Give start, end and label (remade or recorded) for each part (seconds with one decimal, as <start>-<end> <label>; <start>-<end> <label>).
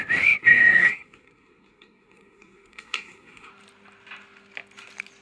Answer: 0.0-0.4 recorded; 0.4-3.5 remade; 3.5-5.2 recorded